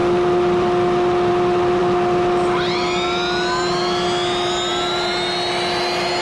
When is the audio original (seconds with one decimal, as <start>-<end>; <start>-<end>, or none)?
0.0-6.2